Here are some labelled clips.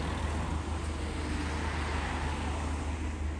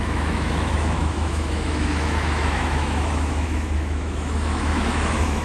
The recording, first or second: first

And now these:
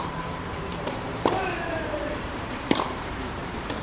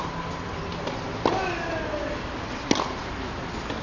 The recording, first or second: second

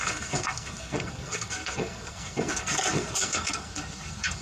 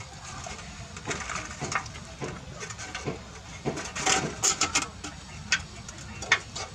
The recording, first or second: second